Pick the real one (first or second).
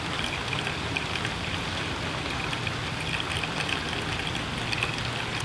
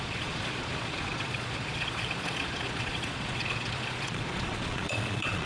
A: first